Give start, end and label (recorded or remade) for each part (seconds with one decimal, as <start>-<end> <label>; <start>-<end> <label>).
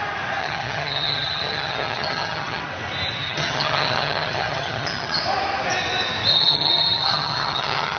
0.0-0.4 recorded; 0.4-2.6 remade; 2.6-3.2 recorded; 3.2-5.2 remade; 5.2-6.3 recorded; 6.3-8.0 remade